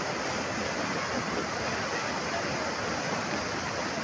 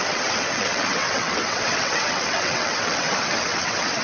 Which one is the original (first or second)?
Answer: first